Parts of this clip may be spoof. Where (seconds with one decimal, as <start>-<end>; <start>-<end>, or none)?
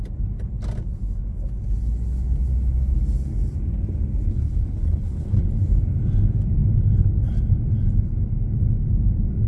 4.3-5.4